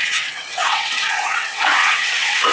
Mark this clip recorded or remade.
remade